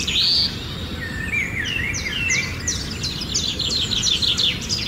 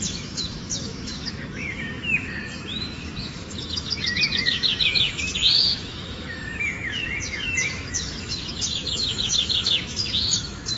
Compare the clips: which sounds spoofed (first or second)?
second